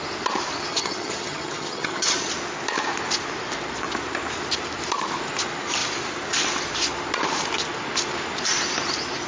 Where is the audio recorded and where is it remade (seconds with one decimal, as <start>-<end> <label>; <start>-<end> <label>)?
0.0-0.7 recorded; 0.7-2.3 remade; 2.3-9.3 recorded